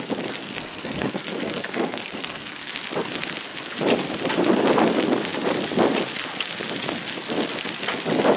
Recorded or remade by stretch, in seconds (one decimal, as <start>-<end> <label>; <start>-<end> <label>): 0.0-0.4 recorded; 0.4-2.7 remade; 2.7-8.4 recorded